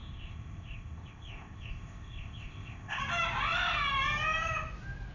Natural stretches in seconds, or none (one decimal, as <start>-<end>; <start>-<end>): 3.0-5.1